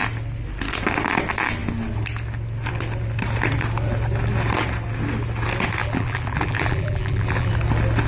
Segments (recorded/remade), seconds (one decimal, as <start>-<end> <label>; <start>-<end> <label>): 0.0-5.8 recorded; 5.8-7.5 remade; 7.5-8.1 recorded

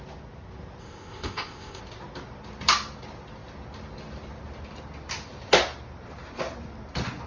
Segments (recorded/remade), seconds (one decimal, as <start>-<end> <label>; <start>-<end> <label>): 0.0-0.8 recorded; 0.8-1.8 remade; 1.8-7.3 recorded

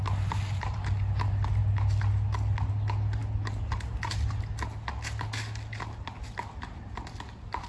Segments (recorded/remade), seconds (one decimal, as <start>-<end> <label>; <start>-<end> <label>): 0.0-7.7 recorded

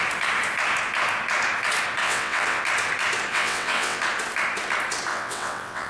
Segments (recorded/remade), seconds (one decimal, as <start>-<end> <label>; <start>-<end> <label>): 0.0-2.0 recorded; 2.0-2.6 remade; 2.6-3.3 recorded; 3.3-4.0 remade; 4.0-5.1 recorded; 5.1-5.9 remade